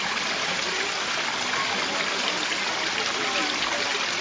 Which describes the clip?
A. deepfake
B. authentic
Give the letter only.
B